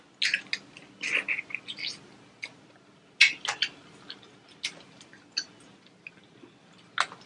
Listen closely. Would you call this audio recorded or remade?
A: recorded